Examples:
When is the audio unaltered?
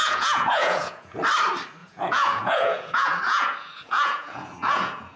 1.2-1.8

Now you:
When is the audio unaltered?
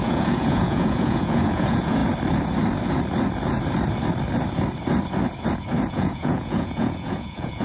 2.0-5.9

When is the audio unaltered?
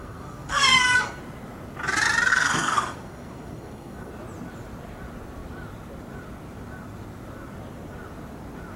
1.2-2.3; 4.1-8.8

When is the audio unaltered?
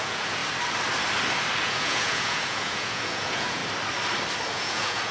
0.4-1.6; 3.6-4.5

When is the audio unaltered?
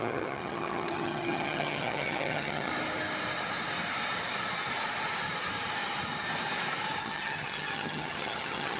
2.7-7.0